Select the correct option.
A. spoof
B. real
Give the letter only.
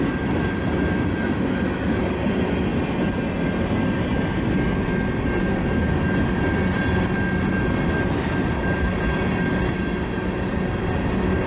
B